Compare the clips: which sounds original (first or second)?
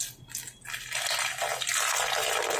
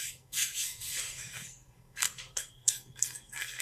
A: first